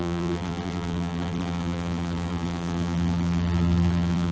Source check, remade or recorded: remade